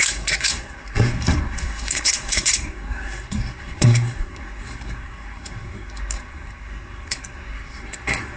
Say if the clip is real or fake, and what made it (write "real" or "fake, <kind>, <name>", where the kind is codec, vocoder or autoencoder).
fake, codec, SNAC